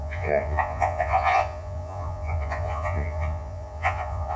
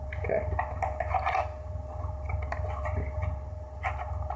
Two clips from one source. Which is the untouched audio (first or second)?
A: second